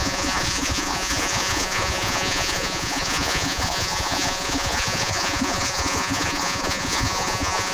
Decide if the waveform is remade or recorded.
remade